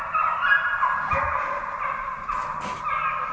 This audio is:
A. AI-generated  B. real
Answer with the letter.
B